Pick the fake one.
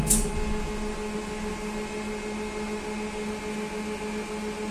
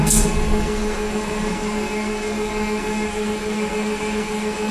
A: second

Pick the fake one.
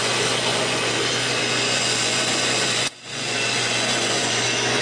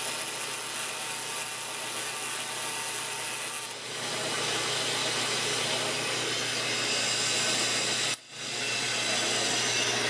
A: first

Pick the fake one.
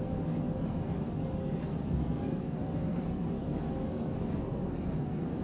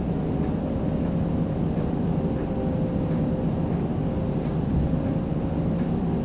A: first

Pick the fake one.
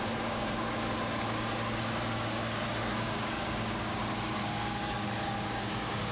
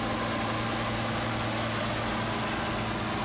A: first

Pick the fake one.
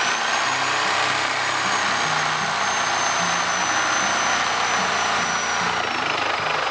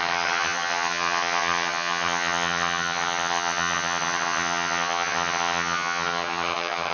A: second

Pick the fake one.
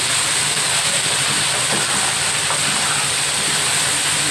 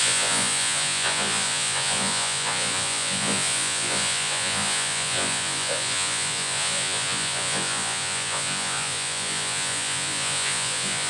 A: second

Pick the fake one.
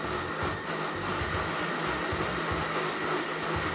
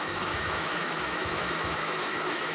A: second